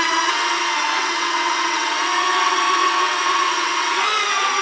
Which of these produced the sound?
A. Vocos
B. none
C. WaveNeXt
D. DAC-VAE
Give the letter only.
C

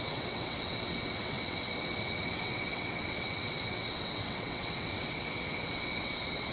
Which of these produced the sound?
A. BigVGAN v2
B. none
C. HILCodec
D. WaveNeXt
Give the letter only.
D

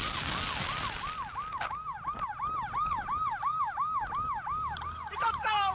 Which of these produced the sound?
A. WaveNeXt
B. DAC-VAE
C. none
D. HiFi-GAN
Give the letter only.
C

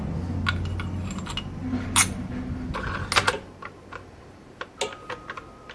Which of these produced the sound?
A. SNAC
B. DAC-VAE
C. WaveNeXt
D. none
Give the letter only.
D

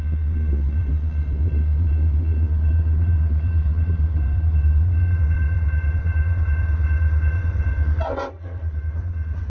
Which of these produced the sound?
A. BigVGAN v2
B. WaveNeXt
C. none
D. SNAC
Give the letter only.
B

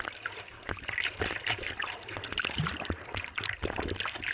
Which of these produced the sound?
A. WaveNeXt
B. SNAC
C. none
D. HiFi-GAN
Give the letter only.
C